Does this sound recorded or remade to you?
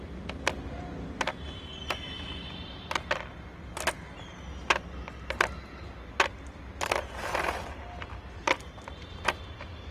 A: recorded